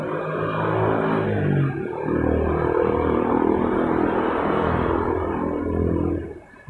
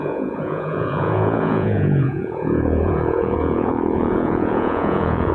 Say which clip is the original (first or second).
first